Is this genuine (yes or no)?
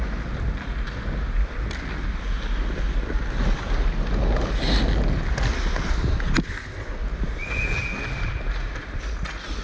yes